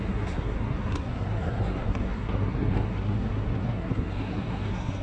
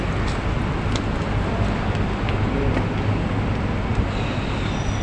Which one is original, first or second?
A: second